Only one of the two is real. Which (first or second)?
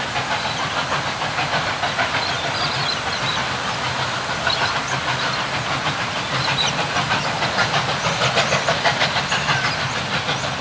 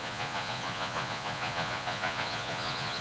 first